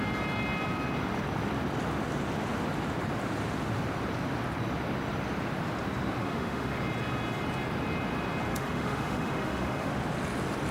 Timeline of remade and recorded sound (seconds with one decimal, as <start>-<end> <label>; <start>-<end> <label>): 0.0-6.2 recorded; 6.2-6.8 remade; 6.8-8.5 recorded; 8.5-9.9 remade; 9.9-10.7 recorded